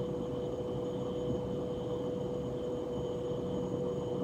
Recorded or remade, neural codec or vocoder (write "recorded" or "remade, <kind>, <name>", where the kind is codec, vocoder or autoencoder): recorded